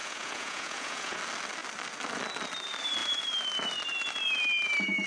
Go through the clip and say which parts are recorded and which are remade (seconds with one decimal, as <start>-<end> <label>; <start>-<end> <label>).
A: 0.0-1.2 remade; 1.2-5.1 recorded